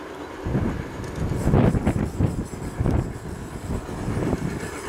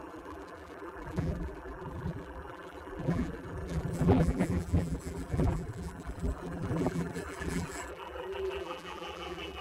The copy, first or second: second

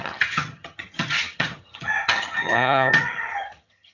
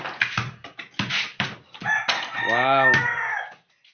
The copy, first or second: first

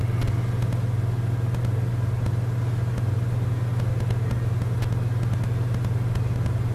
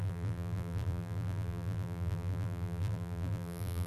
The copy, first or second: second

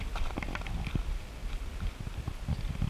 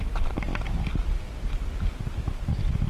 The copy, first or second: first